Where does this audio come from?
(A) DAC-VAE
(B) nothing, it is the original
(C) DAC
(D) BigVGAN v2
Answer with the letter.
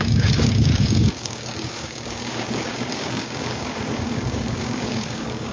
C